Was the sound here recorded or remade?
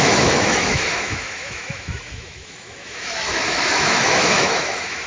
remade